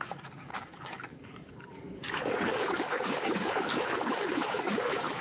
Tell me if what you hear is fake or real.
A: fake